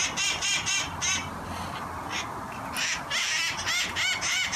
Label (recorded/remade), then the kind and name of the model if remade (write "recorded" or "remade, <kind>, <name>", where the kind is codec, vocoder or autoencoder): recorded